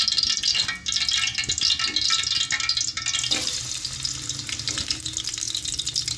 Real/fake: real